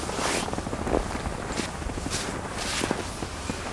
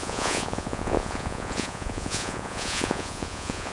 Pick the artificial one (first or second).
second